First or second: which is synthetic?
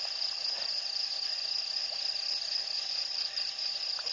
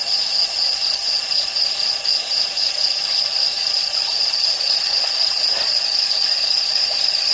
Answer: second